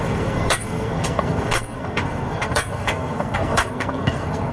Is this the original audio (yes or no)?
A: no